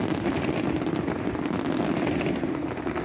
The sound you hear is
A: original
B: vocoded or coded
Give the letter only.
A